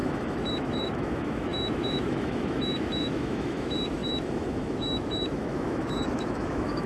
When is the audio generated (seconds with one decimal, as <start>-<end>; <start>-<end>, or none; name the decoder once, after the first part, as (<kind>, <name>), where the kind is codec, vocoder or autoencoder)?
0.0-6.9 (autoencoder, DAC-VAE)